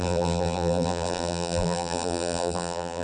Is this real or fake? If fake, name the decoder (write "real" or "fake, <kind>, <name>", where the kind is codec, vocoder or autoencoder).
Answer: fake, vocoder, BigVGAN v2